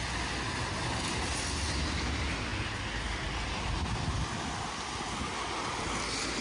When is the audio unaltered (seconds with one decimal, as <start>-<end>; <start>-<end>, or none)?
0.0-6.4